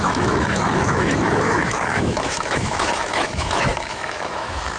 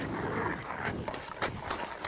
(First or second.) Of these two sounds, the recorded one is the second